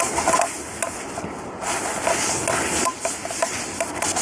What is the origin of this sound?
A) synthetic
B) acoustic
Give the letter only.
B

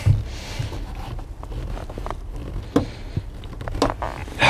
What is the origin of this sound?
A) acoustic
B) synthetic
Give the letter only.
A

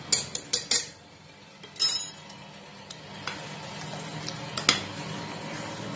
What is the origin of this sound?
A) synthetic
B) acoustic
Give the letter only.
B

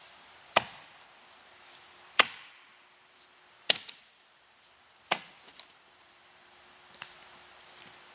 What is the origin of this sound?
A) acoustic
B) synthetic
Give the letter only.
B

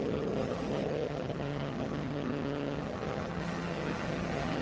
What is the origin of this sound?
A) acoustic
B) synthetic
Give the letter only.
B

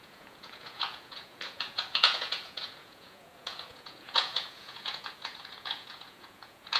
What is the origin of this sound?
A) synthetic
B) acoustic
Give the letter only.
A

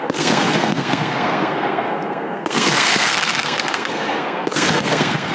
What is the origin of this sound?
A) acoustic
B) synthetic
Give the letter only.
B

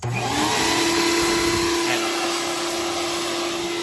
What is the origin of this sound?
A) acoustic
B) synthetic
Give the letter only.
A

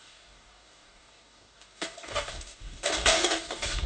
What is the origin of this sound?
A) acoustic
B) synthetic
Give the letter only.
B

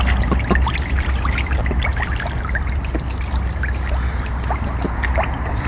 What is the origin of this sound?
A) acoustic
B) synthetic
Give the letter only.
A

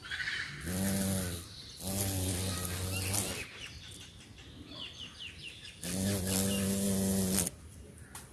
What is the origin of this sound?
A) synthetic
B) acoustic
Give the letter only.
B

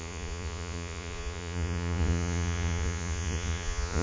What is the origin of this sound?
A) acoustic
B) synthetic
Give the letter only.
B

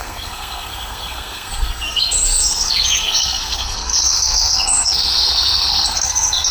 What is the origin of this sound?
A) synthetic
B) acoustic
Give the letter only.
A